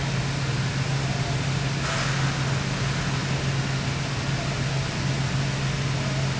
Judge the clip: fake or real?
real